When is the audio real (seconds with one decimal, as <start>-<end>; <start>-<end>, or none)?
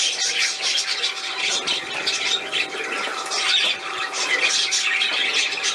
0.0-3.1; 4.0-5.7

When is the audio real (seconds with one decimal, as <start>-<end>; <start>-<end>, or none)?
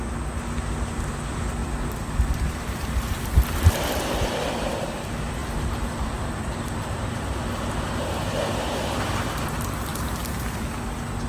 0.0-1.6; 4.2-5.4; 9.1-9.9; 10.6-11.3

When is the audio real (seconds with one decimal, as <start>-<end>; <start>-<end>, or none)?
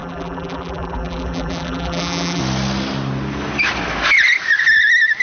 2.4-5.2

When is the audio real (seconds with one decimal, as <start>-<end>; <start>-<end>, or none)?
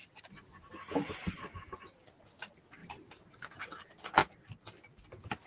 0.0-2.8; 3.6-5.5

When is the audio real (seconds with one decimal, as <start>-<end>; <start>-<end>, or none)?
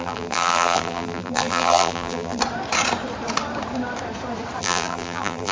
2.4-4.6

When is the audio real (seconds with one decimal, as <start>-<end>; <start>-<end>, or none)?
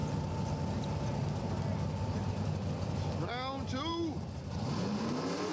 0.0-3.9; 4.5-5.5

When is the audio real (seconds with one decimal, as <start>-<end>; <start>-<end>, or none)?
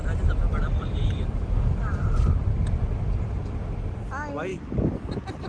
3.3-5.5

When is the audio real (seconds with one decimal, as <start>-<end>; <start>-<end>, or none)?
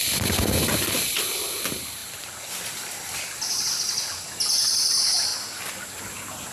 0.0-2.0; 3.7-6.5